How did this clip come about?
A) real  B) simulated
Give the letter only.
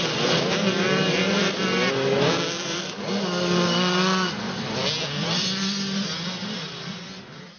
B